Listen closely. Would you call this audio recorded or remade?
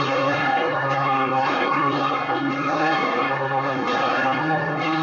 remade